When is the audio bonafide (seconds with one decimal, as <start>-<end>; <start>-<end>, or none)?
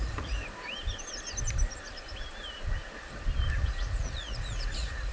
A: 0.4-3.5